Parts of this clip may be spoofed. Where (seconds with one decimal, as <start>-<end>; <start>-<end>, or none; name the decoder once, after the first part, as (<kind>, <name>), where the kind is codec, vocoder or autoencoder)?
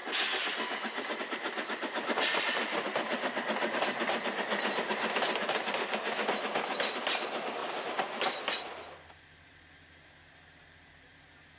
none